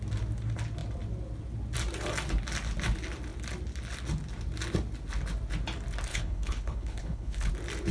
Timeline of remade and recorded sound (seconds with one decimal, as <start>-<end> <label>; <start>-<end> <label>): 0.0-6.1 recorded; 6.1-7.5 remade; 7.5-7.9 recorded